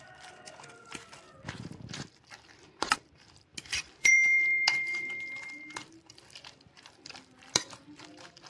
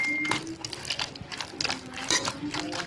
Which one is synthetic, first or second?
first